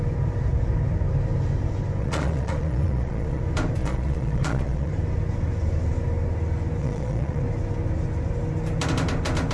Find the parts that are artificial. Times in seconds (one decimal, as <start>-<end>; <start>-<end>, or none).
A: 2.0-3.4; 3.8-4.9; 6.8-7.4